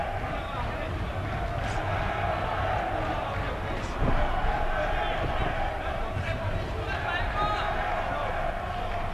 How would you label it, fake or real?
real